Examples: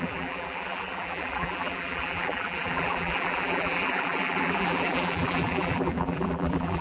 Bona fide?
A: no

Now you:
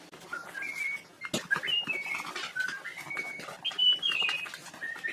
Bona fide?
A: yes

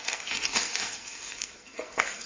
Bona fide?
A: no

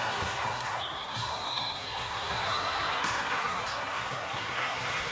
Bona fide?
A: no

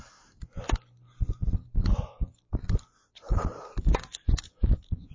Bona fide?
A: yes